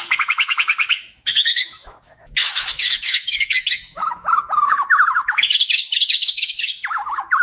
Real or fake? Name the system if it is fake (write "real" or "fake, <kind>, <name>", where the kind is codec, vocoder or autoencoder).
fake, autoencoder, DAC-VAE